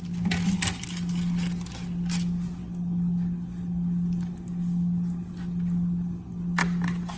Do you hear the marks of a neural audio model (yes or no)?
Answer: no